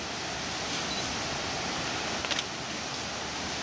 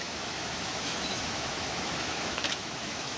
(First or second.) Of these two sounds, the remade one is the second